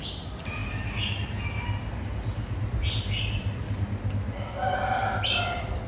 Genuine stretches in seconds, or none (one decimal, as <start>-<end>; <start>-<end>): 0.0-5.9